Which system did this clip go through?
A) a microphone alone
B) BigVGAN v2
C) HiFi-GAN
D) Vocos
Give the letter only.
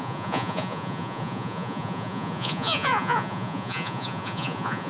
D